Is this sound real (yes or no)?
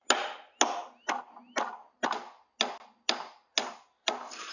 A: yes